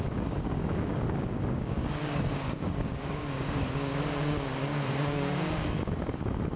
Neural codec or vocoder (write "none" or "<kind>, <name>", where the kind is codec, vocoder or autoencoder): codec, DAC